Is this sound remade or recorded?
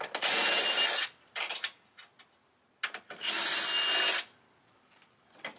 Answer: recorded